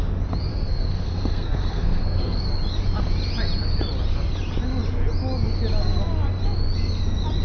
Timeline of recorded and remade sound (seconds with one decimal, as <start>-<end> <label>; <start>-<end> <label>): 0.0-0.5 recorded; 0.5-2.4 remade; 2.4-7.4 recorded